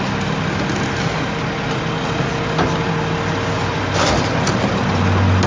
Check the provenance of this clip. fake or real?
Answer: real